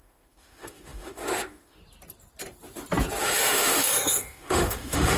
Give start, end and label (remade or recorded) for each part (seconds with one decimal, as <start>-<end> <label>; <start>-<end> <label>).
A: 0.0-1.8 remade; 1.8-3.2 recorded; 3.2-5.2 remade